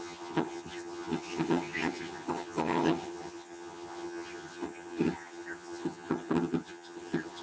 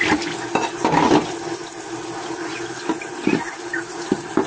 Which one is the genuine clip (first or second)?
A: second